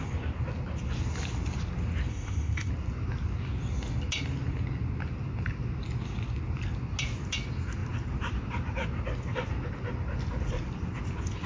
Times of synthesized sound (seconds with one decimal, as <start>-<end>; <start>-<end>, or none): 2.1-2.7